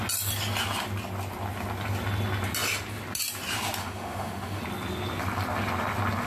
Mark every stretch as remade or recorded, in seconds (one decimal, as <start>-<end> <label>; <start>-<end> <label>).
0.0-3.8 recorded; 3.8-4.6 remade; 4.6-6.3 recorded